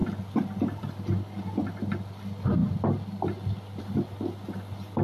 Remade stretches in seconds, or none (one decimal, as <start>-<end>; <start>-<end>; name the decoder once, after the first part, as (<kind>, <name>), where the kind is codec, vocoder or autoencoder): none